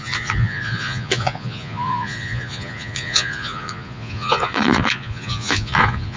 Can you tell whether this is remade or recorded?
remade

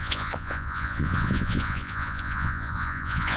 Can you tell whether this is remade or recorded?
remade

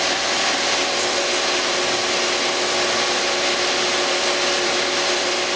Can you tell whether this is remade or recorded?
recorded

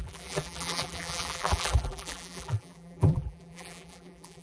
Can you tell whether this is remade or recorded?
remade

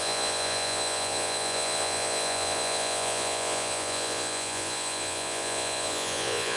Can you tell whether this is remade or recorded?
remade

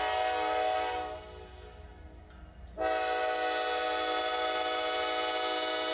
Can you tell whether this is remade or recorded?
recorded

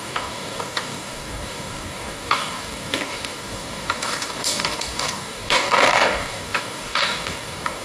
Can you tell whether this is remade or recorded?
remade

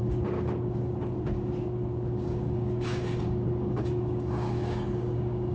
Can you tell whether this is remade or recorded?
remade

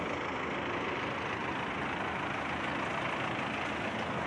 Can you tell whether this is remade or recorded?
recorded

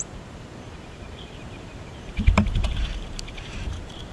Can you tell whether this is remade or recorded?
remade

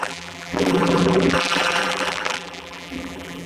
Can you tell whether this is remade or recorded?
remade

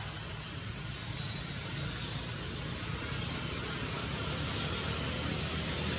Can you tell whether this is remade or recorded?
recorded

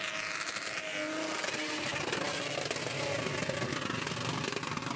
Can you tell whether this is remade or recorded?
recorded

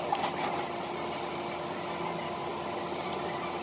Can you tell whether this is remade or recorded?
recorded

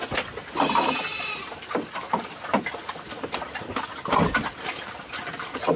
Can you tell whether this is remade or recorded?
recorded